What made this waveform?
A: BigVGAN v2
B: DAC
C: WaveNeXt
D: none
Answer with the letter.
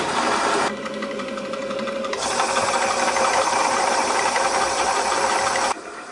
A